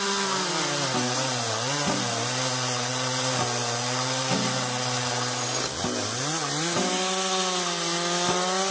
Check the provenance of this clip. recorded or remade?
recorded